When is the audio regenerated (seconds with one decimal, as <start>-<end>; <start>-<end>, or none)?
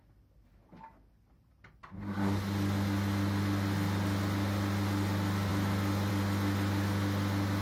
none